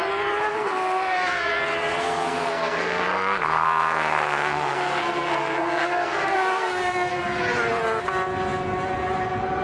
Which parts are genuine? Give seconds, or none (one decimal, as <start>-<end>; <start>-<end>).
0.0-0.5; 1.5-2.0; 7.2-9.6